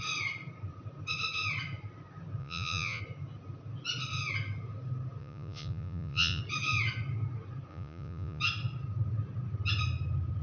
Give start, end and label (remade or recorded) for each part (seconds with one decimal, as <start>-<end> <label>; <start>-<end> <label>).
0.0-2.4 recorded; 2.4-3.0 remade; 3.0-5.2 recorded; 5.2-6.4 remade; 6.4-7.7 recorded; 7.7-8.4 remade; 8.4-10.4 recorded